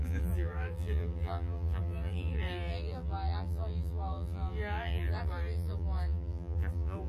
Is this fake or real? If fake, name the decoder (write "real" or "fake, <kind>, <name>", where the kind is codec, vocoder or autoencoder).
fake, vocoder, BigVGAN v2